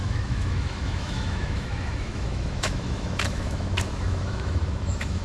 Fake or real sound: fake